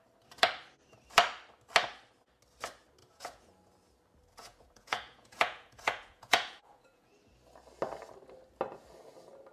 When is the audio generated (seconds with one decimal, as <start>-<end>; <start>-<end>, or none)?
3.0-3.6; 4.4-7.1